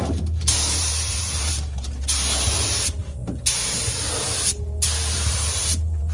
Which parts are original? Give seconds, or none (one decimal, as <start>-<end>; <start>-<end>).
none